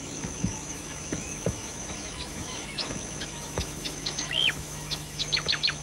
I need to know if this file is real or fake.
fake